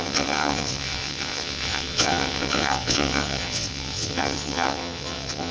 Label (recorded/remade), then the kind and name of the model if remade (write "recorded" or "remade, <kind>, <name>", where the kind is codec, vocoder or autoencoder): remade, vocoder, WaveNeXt